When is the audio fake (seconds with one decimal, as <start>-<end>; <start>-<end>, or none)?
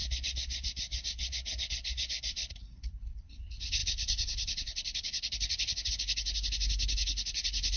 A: 0.0-7.8